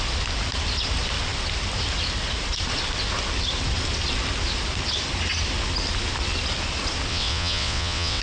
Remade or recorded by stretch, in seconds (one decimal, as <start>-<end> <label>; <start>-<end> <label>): 0.0-7.1 recorded; 7.1-8.2 remade